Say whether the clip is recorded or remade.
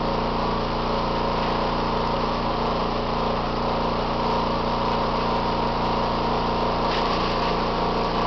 recorded